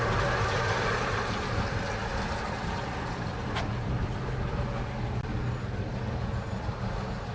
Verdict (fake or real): real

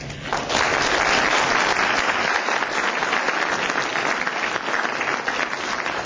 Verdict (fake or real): real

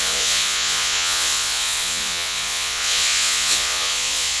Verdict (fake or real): fake